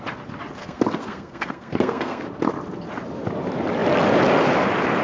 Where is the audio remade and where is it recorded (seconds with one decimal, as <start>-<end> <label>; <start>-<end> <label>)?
0.0-0.6 recorded; 0.6-2.2 remade; 2.2-5.0 recorded